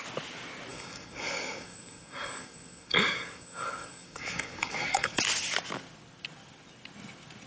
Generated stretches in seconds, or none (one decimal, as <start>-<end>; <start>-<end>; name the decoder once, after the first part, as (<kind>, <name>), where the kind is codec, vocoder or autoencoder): 0.7-5.2 (codec, DAC)